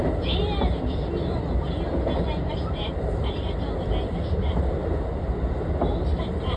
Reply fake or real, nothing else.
real